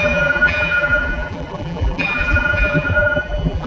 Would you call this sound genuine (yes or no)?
no